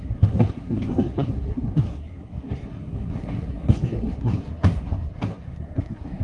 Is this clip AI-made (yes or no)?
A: yes